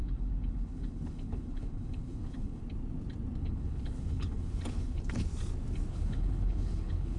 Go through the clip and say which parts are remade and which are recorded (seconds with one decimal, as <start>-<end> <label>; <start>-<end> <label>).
0.0-2.6 remade; 2.6-3.4 recorded; 3.4-5.3 remade; 5.3-5.9 recorded; 5.9-7.2 remade